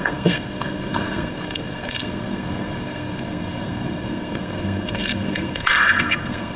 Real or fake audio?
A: fake